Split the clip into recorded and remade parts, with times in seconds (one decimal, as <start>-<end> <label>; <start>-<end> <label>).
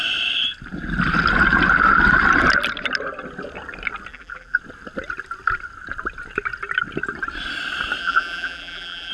0.0-4.1 recorded; 4.1-4.6 remade; 4.6-8.0 recorded; 8.0-9.1 remade